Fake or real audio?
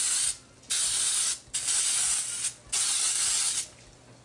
real